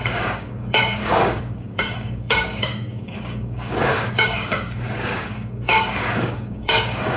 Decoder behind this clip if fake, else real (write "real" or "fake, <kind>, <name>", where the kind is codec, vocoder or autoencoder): fake, codec, DAC